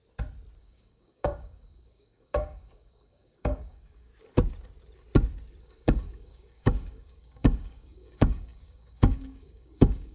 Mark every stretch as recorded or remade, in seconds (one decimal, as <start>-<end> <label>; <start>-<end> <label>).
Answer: 0.0-0.6 recorded; 0.6-4.1 remade; 4.1-5.6 recorded; 5.6-10.1 remade